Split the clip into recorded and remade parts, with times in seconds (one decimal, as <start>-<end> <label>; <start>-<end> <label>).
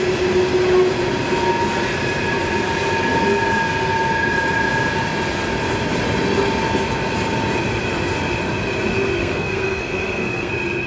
0.0-9.2 recorded; 9.2-10.5 remade; 10.5-10.9 recorded